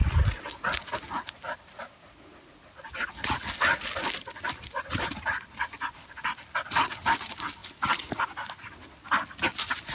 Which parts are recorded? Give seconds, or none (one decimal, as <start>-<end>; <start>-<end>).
0.0-9.9